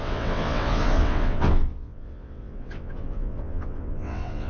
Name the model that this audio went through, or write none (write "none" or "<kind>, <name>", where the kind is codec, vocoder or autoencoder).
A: vocoder, WaveNeXt